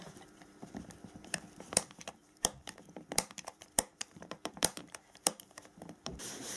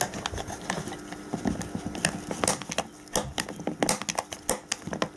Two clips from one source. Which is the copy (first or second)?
first